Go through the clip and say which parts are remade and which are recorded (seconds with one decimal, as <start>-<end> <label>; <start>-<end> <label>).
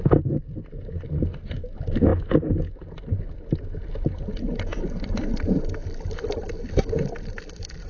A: 0.0-7.9 recorded